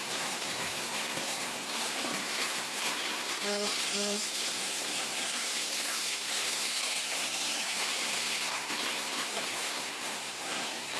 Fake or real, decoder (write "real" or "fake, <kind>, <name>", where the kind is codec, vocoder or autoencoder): fake, codec, SNAC